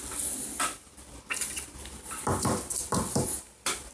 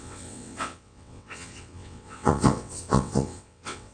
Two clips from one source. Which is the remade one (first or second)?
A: second